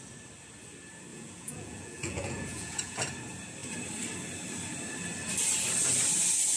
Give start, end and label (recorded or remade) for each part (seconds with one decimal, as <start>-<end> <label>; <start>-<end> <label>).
0.0-1.1 recorded; 1.1-3.0 remade; 3.0-6.6 recorded